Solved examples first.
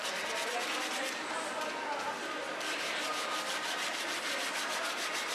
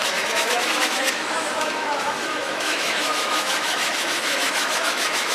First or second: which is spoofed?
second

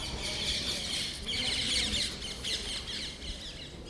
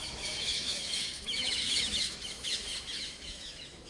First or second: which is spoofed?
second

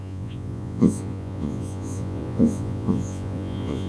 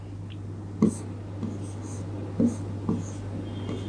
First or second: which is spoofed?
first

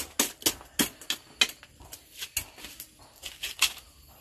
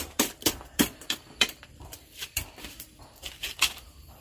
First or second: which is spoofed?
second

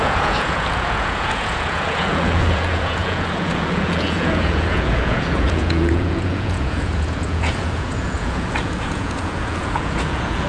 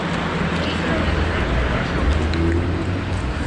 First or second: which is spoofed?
first